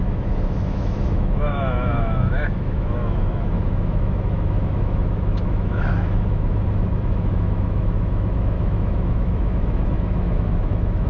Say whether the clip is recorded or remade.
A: remade